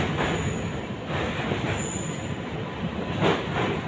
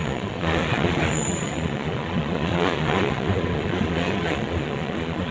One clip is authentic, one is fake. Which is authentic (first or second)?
first